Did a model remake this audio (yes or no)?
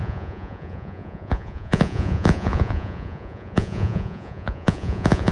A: yes